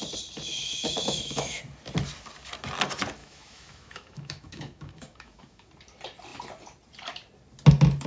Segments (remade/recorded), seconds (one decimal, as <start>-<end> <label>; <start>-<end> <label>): 0.0-0.5 recorded; 0.5-1.6 remade; 1.6-3.2 recorded; 3.2-5.7 remade; 5.7-8.1 recorded